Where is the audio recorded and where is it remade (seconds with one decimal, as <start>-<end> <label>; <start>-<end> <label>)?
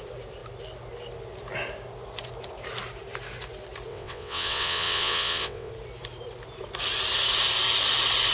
0.0-3.9 recorded; 3.9-5.7 remade; 5.7-8.3 recorded